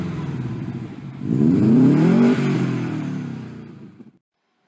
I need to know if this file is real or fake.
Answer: fake